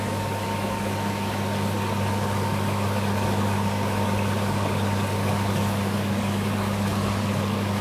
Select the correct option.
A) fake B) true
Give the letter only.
A